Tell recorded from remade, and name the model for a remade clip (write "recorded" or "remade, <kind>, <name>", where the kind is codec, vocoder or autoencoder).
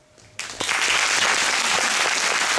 recorded